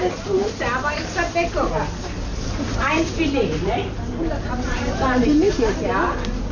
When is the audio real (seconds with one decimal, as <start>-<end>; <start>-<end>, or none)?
0.0-2.3; 5.5-6.5